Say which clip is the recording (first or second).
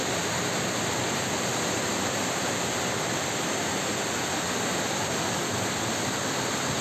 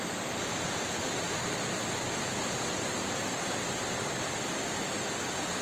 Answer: second